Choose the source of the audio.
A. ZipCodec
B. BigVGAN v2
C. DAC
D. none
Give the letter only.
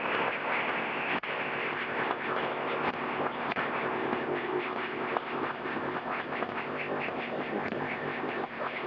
A